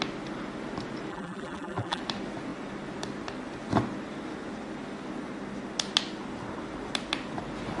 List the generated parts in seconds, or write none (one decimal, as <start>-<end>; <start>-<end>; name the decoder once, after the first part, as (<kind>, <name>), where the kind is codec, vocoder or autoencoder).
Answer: 1.1-2.0 (vocoder, BigVGAN v2)